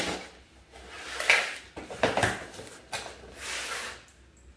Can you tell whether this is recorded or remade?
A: recorded